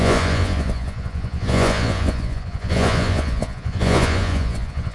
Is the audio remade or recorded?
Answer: remade